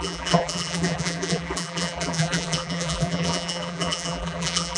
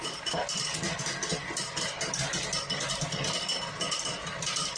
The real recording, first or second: second